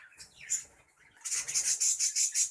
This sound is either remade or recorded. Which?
remade